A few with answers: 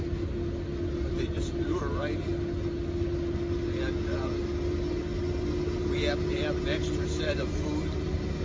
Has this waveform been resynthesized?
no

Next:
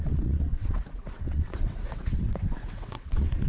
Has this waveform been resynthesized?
yes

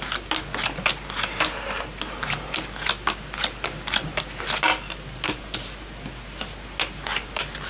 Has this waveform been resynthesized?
no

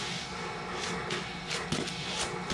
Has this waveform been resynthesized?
no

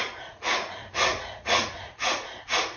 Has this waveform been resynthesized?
yes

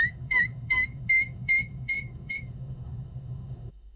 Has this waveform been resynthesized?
yes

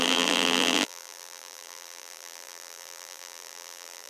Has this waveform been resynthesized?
yes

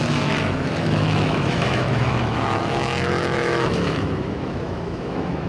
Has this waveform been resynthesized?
yes